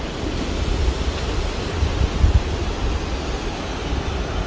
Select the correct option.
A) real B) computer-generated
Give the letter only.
A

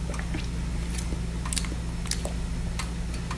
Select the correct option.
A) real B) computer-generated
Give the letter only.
A